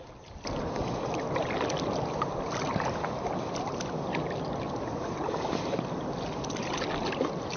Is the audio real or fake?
real